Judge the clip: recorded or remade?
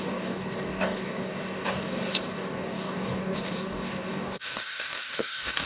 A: remade